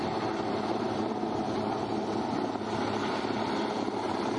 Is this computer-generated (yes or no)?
no